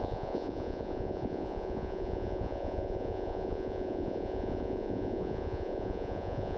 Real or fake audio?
fake